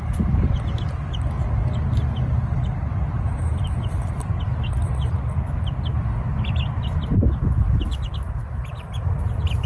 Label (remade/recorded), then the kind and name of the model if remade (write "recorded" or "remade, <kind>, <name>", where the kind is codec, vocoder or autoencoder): recorded